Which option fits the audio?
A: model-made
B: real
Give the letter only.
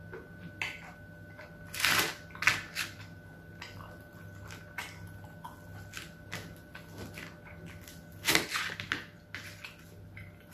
B